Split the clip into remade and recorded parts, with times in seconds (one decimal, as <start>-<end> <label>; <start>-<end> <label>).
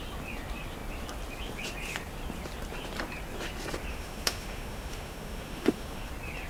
0.0-3.9 recorded; 3.9-6.1 remade; 6.1-6.5 recorded